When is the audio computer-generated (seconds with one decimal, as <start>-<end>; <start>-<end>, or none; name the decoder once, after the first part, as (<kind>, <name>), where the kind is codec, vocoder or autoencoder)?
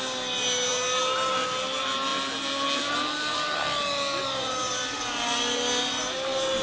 none